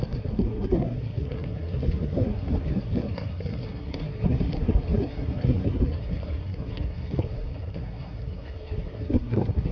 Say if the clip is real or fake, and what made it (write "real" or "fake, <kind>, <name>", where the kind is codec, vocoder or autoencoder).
fake, codec, SNAC